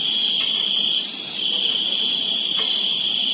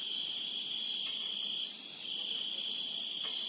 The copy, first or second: first